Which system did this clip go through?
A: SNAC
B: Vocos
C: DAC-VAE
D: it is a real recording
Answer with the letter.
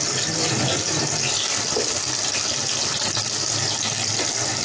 D